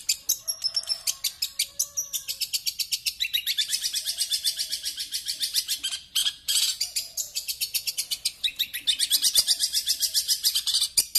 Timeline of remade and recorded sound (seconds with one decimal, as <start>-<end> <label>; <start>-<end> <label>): 0.0-6.2 recorded; 6.2-7.9 remade; 7.9-11.2 recorded